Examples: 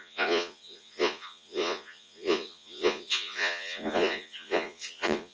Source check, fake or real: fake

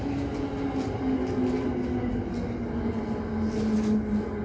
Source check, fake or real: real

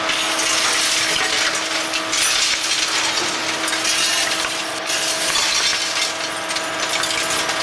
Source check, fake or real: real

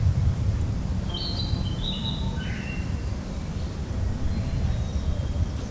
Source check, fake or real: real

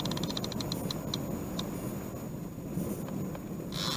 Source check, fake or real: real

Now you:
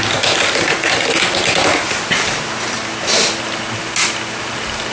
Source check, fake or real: real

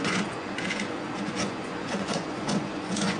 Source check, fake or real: fake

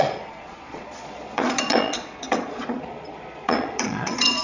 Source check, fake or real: fake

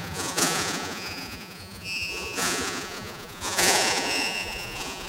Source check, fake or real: fake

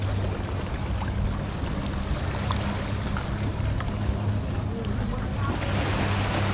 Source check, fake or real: real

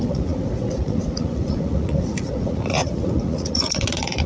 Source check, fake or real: fake